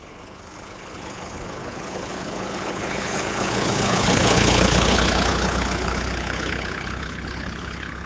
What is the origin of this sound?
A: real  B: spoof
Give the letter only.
B